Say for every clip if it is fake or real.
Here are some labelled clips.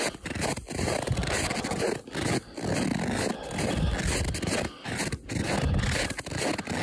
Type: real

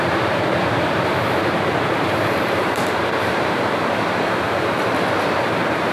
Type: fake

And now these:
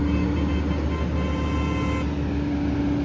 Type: real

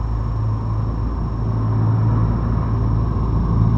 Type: real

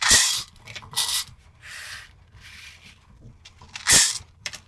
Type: fake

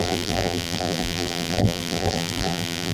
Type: fake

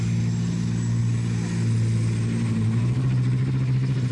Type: real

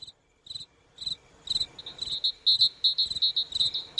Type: real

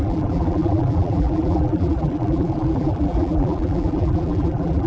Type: fake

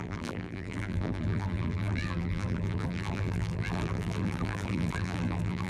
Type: fake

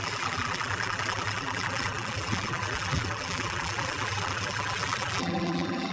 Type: fake